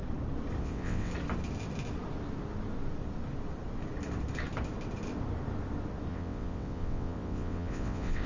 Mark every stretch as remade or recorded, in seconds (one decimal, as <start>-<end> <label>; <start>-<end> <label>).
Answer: 0.0-0.6 recorded; 0.6-1.1 remade; 1.1-6.1 recorded; 6.1-8.3 remade